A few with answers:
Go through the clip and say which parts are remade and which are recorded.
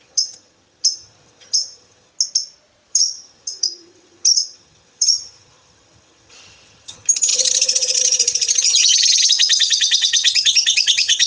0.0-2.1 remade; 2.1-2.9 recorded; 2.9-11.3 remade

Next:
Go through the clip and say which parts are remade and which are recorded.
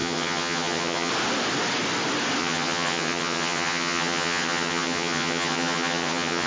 0.0-1.1 remade; 1.1-2.4 recorded; 2.4-6.5 remade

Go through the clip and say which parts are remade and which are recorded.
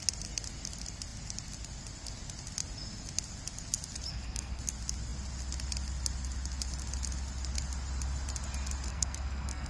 0.0-4.1 recorded; 4.1-4.6 remade; 4.6-8.9 recorded; 8.9-9.7 remade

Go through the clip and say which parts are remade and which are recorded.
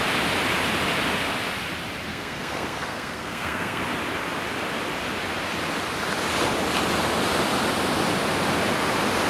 0.0-2.1 recorded; 2.1-3.8 remade; 3.8-9.3 recorded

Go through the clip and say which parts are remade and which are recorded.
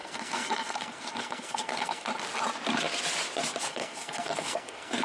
0.0-2.1 remade; 2.1-3.6 recorded; 3.6-5.0 remade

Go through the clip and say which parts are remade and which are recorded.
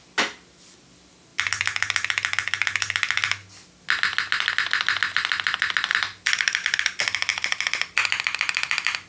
0.0-5.9 recorded; 5.9-6.6 remade; 6.6-7.3 recorded; 7.3-9.1 remade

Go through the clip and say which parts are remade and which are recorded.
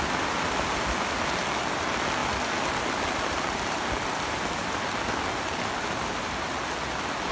0.0-7.3 recorded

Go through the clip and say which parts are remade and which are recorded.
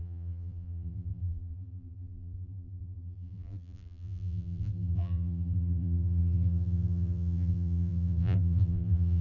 0.0-9.2 remade